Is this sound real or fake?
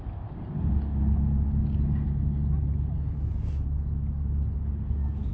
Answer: real